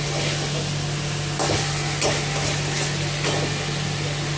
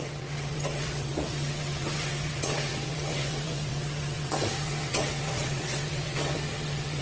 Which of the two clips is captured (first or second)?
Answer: first